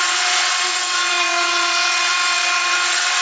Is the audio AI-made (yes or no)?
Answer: yes